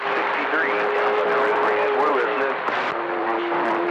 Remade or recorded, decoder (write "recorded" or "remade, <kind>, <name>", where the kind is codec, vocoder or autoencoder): remade, vocoder, BigVGAN v2